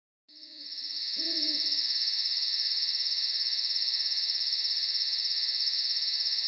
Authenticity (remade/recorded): remade